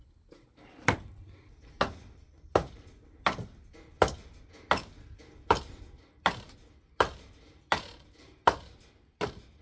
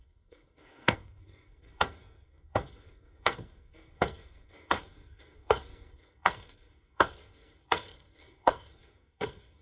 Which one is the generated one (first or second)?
second